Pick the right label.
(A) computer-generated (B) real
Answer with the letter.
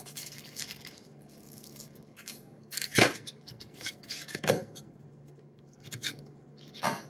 A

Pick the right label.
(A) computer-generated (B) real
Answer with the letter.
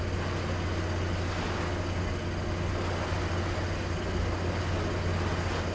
B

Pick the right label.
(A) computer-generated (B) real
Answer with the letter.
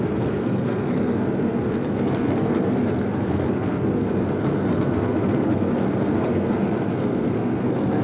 A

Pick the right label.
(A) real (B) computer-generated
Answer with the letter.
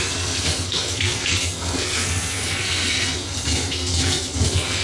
B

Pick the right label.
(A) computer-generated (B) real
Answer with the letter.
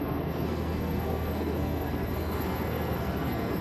A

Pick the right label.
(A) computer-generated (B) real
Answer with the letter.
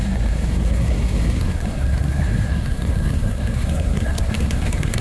A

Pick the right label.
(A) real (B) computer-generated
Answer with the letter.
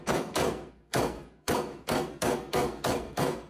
B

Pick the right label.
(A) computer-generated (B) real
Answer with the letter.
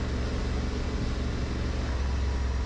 B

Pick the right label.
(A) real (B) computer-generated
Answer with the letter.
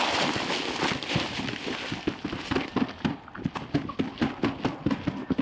A